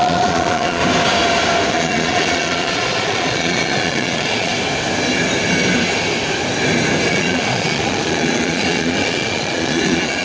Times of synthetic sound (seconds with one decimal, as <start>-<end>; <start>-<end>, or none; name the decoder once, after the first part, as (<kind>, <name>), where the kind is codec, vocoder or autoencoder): 0.0-0.8 (vocoder, Vocos); 1.7-4.5; 7.1-10.2